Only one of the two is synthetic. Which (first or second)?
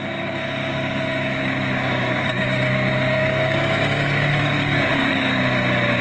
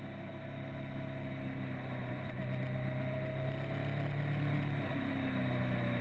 first